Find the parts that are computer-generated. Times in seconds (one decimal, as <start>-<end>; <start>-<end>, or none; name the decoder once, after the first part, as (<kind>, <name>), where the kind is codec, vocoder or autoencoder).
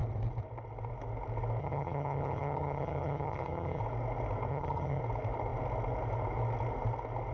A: 1.6-3.8 (vocoder, HiFi-GAN); 4.5-5.0